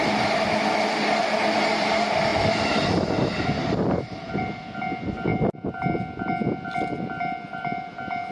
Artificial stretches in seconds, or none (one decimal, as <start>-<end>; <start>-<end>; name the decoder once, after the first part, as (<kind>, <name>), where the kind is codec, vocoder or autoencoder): none